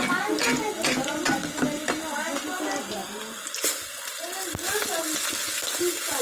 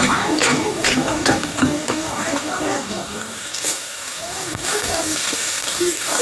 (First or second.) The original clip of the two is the first